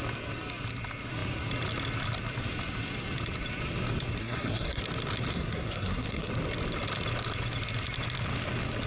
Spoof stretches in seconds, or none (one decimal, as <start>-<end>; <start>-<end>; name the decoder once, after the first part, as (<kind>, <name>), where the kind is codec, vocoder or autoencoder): 4.2-4.8 (codec, SNAC); 5.3-6.3